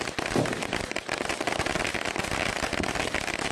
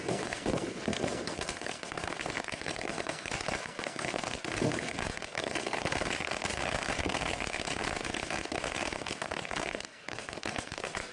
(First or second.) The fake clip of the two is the second